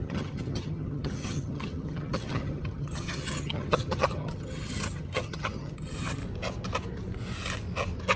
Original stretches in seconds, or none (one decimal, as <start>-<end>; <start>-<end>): 6.2-8.2